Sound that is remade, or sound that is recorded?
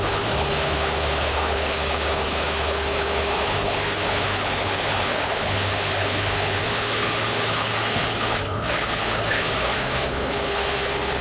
remade